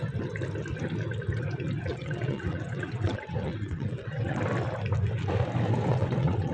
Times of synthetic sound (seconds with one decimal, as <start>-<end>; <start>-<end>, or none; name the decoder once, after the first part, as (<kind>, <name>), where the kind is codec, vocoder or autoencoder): 1.9-4.4 (vocoder, WaveNeXt); 5.9-6.5